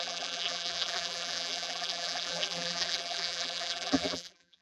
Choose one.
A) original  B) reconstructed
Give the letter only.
B